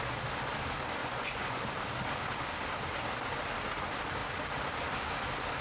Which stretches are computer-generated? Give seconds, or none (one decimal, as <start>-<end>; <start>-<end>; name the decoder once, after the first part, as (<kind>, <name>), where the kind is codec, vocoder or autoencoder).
1.0-1.6 (vocoder, Vocos)